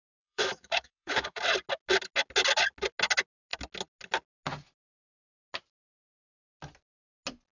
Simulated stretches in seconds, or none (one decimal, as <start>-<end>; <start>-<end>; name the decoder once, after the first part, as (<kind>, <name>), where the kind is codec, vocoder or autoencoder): 0.0-1.4 (autoencoder, DAC-VAE)